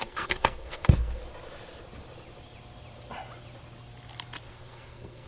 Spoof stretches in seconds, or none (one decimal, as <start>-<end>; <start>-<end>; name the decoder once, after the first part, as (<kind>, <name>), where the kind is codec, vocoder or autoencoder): 0.0-1.2 (codec, SNAC); 4.4-5.3